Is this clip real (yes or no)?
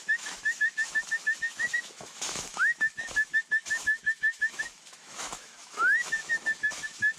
no